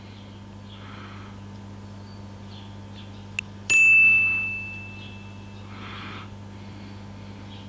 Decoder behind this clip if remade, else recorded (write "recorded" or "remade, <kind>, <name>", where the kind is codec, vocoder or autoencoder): recorded